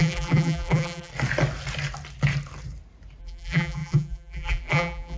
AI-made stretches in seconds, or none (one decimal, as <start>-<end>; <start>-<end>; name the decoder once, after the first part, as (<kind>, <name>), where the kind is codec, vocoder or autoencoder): 0.0-1.1 (vocoder, BigVGAN v2); 3.2-5.2